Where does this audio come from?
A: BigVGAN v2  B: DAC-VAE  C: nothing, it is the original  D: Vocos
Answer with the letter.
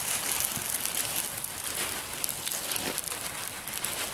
C